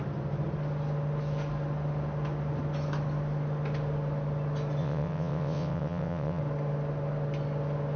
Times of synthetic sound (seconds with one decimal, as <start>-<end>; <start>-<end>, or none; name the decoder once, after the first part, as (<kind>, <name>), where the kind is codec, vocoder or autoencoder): 4.8-6.4 (vocoder, WaveNeXt)